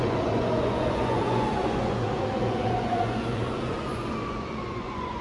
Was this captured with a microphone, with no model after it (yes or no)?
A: no